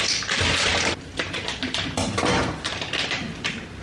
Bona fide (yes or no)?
no